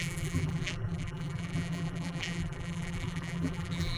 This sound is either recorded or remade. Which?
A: remade